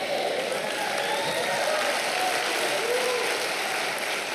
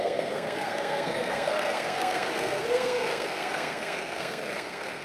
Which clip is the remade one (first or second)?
second